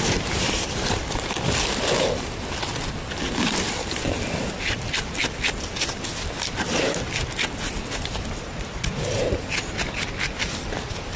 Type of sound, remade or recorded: recorded